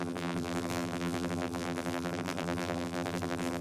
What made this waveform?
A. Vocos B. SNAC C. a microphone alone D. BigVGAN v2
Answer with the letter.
D